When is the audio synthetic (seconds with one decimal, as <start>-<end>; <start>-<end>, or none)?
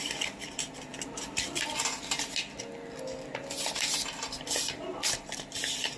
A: none